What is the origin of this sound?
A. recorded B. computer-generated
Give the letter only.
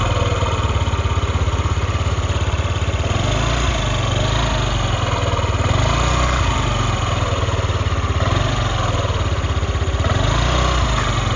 A